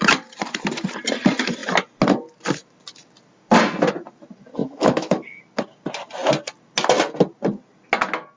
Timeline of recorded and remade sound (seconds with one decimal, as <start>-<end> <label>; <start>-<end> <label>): 0.0-4.6 recorded; 4.6-5.4 remade; 5.4-8.4 recorded